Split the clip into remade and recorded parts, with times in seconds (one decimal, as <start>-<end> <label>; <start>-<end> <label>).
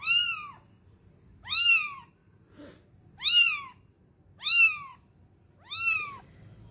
0.0-6.7 recorded